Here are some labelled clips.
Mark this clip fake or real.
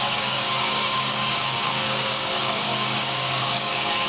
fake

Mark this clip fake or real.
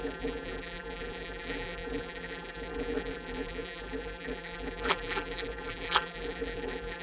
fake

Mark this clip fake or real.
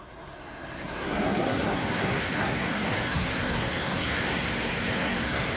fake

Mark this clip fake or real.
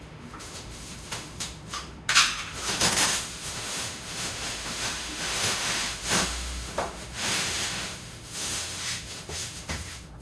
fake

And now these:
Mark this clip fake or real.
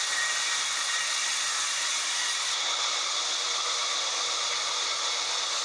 real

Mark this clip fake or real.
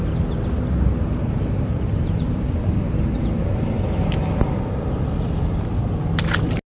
real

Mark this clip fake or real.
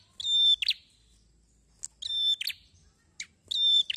real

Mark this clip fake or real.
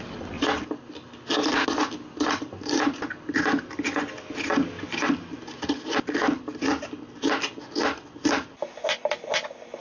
real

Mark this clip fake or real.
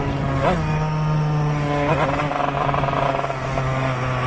real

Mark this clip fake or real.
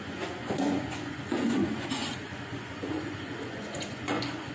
fake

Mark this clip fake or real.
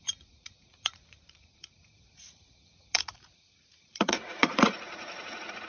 fake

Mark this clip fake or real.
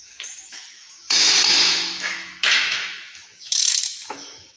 fake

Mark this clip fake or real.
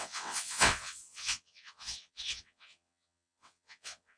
fake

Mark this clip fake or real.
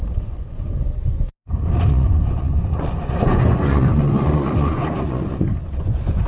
fake